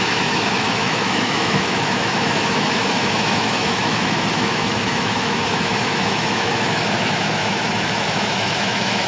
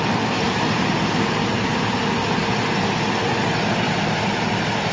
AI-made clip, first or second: first